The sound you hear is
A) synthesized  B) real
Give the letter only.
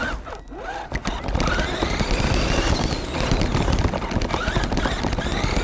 B